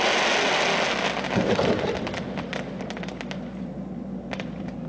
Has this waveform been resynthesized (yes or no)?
no